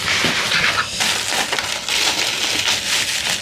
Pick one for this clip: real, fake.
real